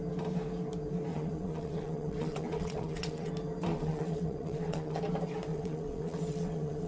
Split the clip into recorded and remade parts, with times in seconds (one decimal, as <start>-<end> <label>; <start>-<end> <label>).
0.0-1.1 recorded; 1.1-3.3 remade; 3.3-3.7 recorded; 3.7-5.0 remade; 5.0-5.5 recorded; 5.5-6.9 remade